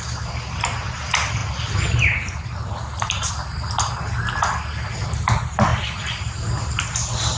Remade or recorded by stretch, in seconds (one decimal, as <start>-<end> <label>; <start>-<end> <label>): 0.0-7.4 recorded

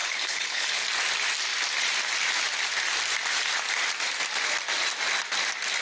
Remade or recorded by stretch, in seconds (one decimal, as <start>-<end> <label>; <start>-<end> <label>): 0.0-0.8 remade; 0.8-5.8 recorded

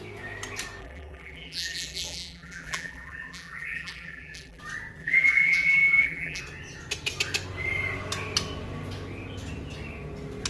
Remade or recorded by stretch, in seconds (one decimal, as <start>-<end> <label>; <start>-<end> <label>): 0.0-0.8 recorded; 0.8-4.6 remade; 4.6-5.0 recorded; 5.0-6.4 remade; 6.4-10.5 recorded

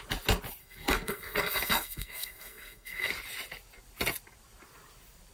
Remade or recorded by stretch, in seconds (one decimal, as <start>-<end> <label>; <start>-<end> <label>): 0.0-0.6 recorded; 0.6-3.1 remade; 3.1-5.3 recorded

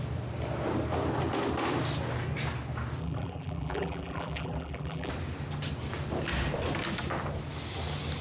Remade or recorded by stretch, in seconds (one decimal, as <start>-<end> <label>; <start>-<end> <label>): 0.0-3.0 recorded; 3.0-5.1 remade; 5.1-8.2 recorded

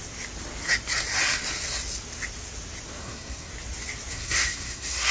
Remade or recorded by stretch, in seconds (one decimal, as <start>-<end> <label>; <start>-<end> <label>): 0.0-3.0 recorded; 3.0-3.5 remade; 3.5-4.1 recorded; 4.1-5.1 remade